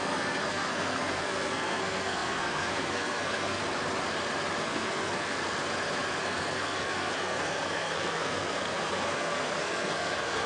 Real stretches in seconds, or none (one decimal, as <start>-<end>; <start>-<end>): 3.6-4.6; 5.4-6.2

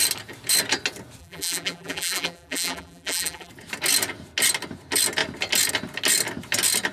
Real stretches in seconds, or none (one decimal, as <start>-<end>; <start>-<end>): 0.0-1.2; 3.5-6.9